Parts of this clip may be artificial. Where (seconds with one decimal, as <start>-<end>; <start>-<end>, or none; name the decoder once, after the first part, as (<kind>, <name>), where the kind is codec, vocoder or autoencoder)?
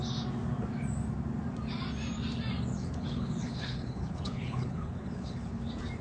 2.7-5.6 (codec, HILCodec)